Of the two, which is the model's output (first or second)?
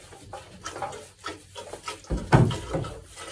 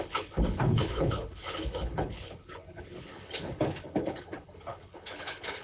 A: second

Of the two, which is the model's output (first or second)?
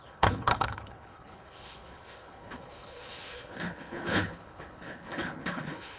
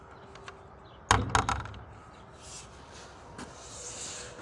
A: first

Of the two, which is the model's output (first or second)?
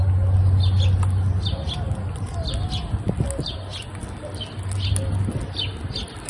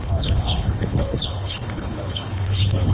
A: second